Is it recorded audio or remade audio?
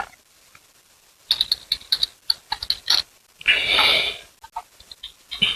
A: recorded